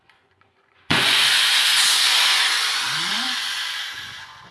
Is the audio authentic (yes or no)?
no